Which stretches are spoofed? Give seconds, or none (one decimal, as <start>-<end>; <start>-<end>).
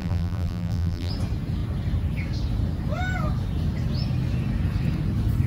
0.0-1.1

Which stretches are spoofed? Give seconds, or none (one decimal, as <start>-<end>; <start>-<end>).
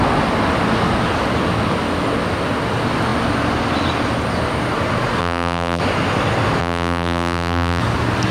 5.2-5.8; 6.6-7.8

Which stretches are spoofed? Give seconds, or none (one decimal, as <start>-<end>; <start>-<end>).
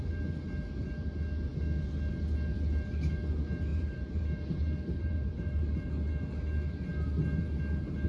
3.7-5.9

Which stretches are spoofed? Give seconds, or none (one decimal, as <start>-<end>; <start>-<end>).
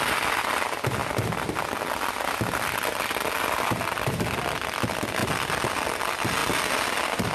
0.0-1.0; 3.3-6.4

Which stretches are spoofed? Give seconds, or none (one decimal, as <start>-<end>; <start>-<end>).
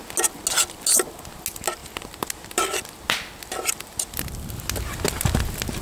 none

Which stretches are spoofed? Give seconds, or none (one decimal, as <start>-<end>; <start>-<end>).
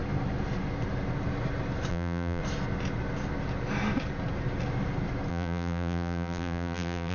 1.9-2.4; 5.3-7.1